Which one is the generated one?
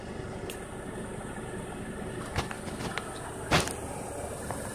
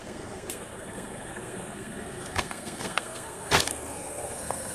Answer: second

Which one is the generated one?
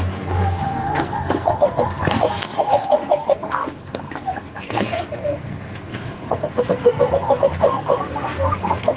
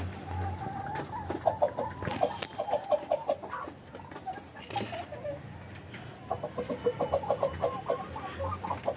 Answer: first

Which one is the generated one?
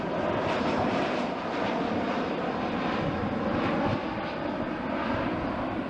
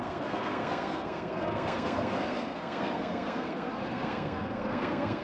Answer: second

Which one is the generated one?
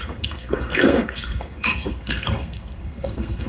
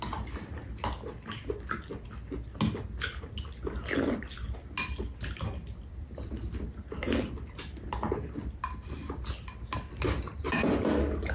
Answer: first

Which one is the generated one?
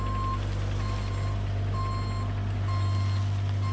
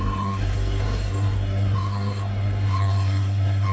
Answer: second